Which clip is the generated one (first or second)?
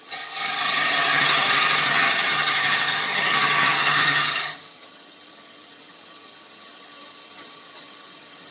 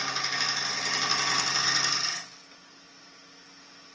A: first